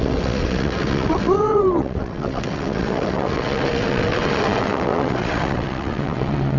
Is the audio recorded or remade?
remade